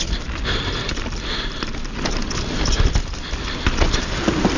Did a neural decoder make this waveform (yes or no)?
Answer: no